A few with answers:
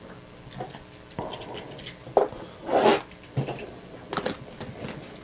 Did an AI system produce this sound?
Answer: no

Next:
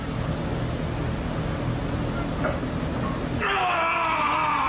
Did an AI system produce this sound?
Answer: no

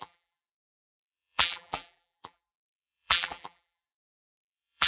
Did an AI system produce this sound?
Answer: yes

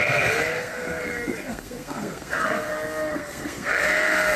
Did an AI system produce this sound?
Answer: yes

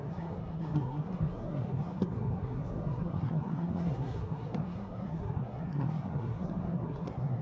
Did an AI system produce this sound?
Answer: yes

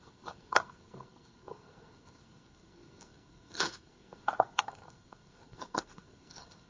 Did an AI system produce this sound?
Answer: yes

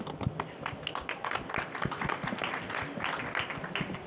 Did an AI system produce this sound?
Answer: no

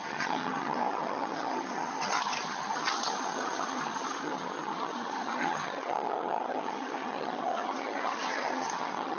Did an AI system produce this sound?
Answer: yes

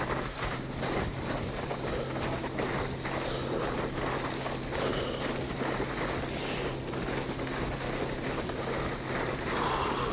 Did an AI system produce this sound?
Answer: no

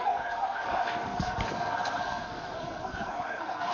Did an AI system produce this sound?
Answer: yes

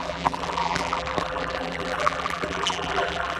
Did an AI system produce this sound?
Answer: yes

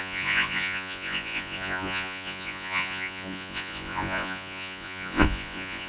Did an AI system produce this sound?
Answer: yes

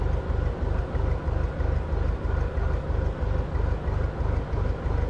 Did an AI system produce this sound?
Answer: no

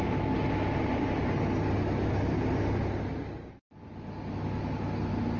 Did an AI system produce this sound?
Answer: no